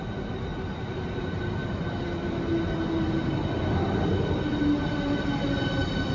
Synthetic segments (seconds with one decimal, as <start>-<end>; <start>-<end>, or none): none

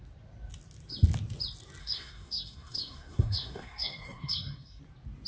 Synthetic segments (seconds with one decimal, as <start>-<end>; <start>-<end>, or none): 1.8-4.8

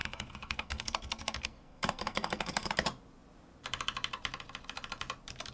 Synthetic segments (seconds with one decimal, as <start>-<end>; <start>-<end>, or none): 0.0-2.7

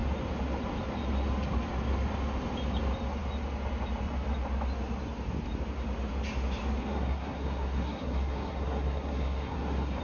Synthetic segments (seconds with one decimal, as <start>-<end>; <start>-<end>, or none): 6.8-10.0

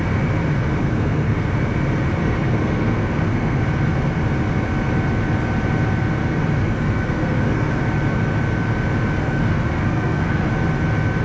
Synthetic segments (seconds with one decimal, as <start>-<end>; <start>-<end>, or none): 0.8-1.5; 2.2-3.6; 6.6-7.8; 9.2-10.5

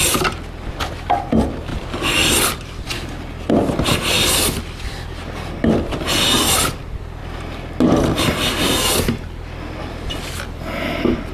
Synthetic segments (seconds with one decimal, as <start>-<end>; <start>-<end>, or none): none